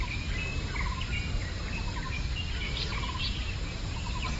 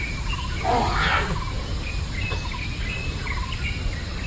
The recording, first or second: first